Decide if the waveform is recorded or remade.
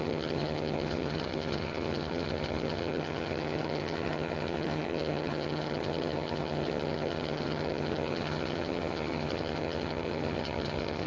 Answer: remade